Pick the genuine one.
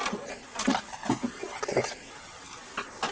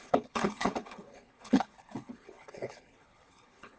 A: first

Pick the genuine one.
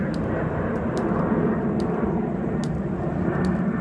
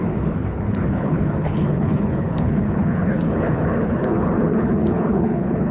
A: first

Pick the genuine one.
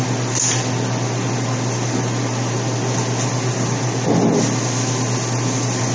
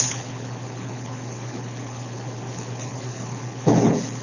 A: first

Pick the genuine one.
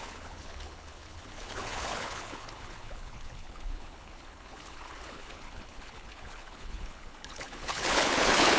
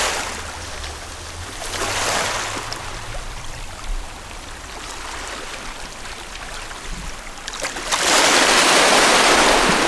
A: second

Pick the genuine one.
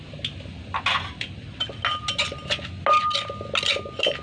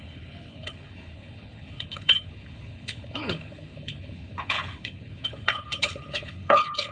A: first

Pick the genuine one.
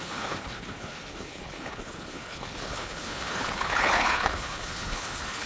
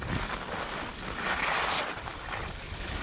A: second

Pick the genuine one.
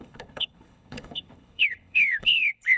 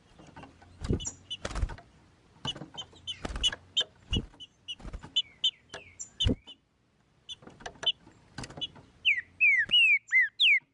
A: second